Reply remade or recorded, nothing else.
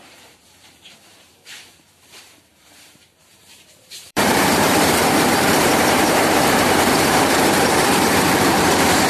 remade